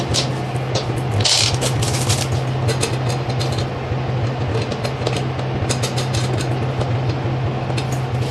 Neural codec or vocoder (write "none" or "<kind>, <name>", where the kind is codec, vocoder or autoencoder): none